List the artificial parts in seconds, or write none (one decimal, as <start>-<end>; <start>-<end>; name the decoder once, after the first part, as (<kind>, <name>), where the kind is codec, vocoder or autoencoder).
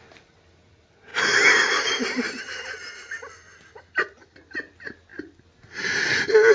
none